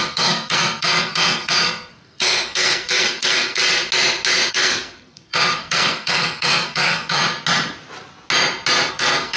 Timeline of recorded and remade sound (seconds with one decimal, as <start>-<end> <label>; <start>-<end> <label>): 0.0-3.6 remade; 3.6-4.5 recorded; 4.5-7.2 remade; 7.2-8.9 recorded; 8.9-9.4 remade